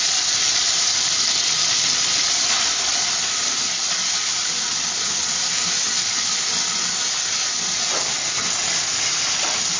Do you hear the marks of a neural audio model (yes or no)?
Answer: no